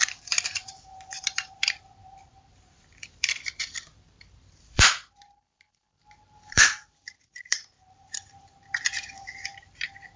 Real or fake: fake